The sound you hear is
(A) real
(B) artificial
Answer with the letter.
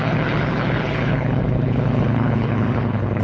B